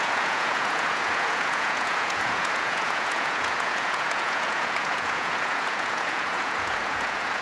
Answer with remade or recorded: remade